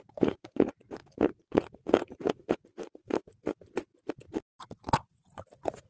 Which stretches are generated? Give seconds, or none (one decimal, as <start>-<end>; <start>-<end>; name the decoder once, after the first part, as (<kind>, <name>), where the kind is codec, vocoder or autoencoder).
0.0-3.9 (vocoder, Vocos); 4.6-5.9

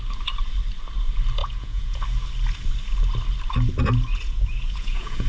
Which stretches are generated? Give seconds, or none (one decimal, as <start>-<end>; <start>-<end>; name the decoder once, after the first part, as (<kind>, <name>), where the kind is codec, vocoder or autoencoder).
1.4-2.0 (vocoder, Vocos); 4.1-5.3

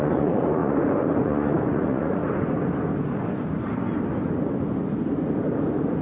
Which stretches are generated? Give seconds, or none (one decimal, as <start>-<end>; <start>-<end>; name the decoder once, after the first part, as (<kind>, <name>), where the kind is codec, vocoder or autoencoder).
0.0-2.2 (vocoder, Vocos)

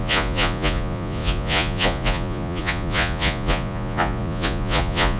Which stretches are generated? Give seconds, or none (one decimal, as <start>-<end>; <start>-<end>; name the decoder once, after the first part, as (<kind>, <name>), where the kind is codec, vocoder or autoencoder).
0.0-5.2 (vocoder, Vocos)

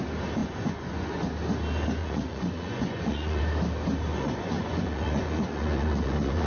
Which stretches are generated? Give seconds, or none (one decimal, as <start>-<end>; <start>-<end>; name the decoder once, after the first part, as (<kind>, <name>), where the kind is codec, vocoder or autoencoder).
0.4-1.2 (vocoder, Vocos); 2.0-3.4; 4.1-6.5

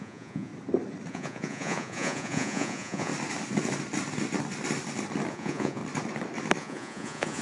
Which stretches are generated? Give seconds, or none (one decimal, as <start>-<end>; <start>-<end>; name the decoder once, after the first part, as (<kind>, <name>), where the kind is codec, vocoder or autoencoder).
0.0-0.5 (vocoder, Vocos); 1.1-3.1; 5.3-5.8; 6.6-7.4

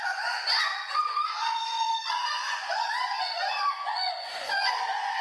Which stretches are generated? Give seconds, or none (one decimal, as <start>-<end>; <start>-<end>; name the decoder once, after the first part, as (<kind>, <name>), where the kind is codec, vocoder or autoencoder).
0.0-5.2 (vocoder, Vocos)